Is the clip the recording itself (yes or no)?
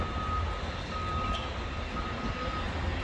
yes